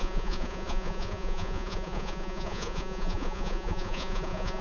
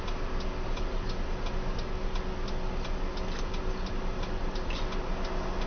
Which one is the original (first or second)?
second